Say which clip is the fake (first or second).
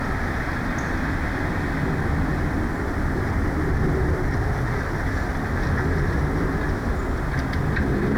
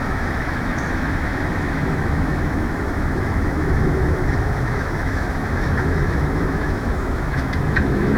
second